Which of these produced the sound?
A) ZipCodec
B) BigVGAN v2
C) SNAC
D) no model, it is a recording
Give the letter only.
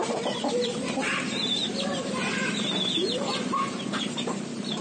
B